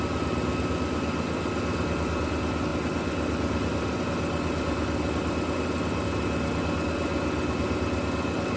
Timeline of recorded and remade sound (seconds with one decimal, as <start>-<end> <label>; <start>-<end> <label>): 0.0-8.6 recorded